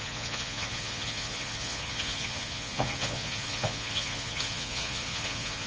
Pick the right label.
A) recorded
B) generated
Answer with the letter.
B